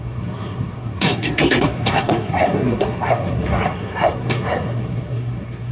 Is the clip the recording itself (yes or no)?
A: no